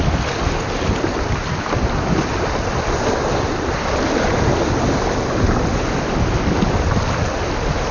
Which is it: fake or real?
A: real